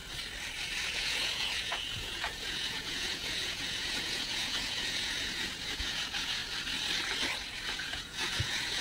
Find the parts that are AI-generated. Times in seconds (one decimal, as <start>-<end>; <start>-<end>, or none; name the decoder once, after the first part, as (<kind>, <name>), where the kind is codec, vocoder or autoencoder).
0.9-6.4 (vocoder, Vocos); 7.7-8.8